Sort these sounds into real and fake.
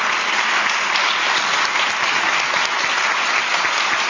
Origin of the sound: real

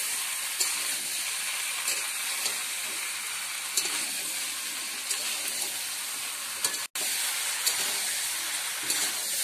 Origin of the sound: real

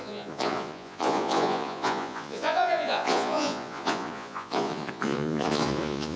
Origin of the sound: fake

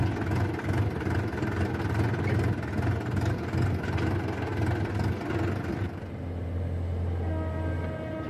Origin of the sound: real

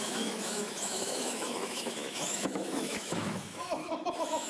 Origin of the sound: fake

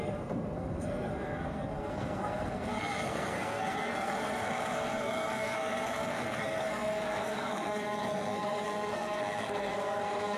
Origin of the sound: fake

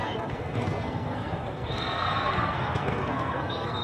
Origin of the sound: fake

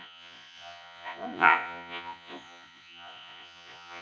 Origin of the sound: fake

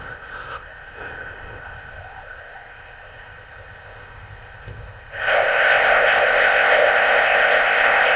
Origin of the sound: fake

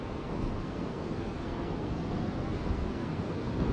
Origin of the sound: fake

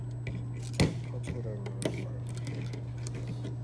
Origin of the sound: real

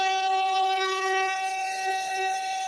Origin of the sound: fake